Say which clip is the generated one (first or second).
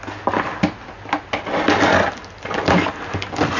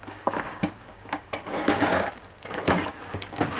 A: second